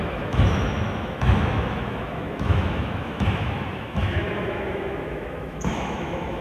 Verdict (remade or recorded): remade